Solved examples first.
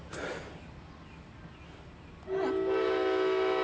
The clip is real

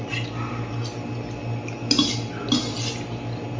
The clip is real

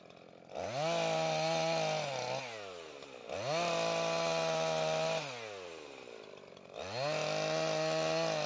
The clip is real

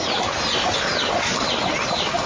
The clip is real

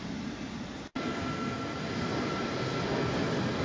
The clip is real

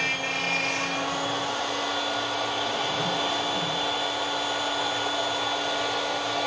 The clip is real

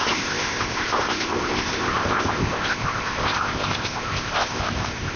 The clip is fake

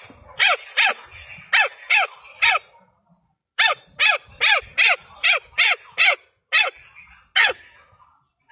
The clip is real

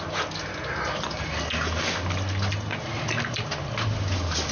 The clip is real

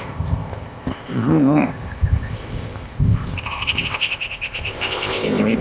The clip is fake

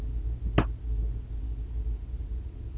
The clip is real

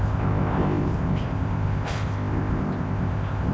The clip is fake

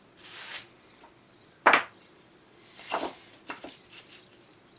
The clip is real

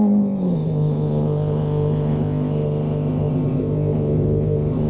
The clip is fake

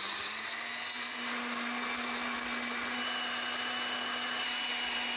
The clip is real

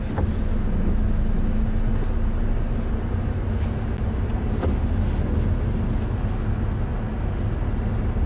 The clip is real